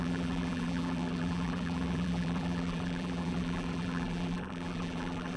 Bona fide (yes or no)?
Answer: no